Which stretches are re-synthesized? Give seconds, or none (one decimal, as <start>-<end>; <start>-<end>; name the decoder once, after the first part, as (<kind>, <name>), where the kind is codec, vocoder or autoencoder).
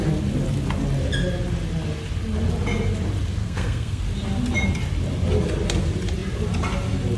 3.4-4.0 (codec, SNAC)